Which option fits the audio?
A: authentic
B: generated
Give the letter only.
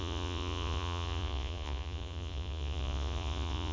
B